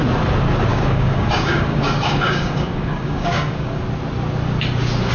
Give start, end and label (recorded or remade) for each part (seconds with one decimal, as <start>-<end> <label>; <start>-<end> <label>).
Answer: 0.0-0.7 recorded; 0.7-3.8 remade; 3.8-5.1 recorded